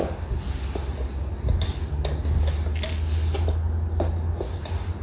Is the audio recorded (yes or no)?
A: yes